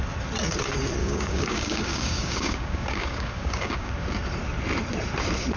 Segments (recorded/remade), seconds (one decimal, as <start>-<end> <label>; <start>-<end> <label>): 0.0-1.0 recorded; 1.0-3.9 remade; 3.9-5.6 recorded